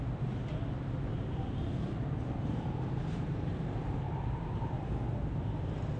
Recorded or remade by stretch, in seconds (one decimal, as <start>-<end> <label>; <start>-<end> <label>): 0.0-1.1 recorded; 1.1-4.7 remade; 4.7-6.0 recorded